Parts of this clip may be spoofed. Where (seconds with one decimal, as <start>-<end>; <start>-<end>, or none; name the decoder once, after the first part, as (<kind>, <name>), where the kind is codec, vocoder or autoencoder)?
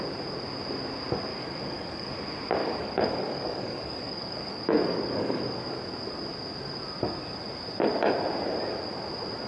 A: 1.3-2.1 (codec, DAC); 2.6-5.7